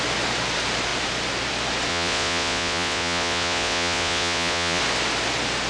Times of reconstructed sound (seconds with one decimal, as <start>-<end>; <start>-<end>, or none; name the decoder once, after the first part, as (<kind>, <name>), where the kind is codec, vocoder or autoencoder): 1.9-4.8 (vocoder, Vocos)